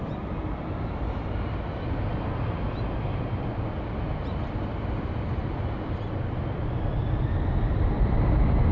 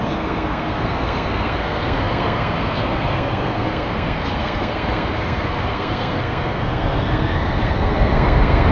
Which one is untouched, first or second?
first